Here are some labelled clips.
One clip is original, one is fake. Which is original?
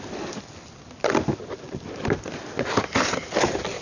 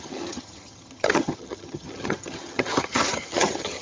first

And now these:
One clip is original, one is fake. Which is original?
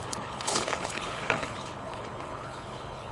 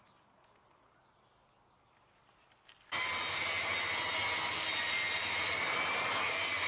second